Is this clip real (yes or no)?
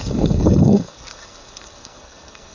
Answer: no